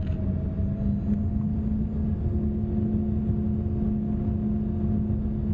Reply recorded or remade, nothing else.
recorded